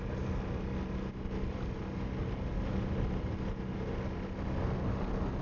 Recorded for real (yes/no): yes